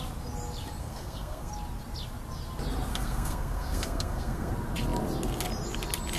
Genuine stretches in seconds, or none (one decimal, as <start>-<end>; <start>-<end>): 0.0-0.8; 1.5-2.9; 4.5-6.2